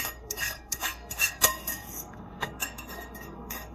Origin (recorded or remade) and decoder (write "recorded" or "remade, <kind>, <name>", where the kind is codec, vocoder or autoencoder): remade, codec, SNAC